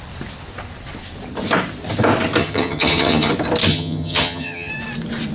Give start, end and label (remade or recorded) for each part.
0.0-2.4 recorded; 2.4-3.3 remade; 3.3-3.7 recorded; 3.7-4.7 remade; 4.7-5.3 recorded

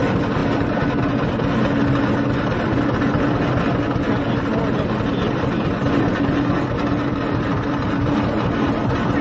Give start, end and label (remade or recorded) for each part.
0.0-9.2 recorded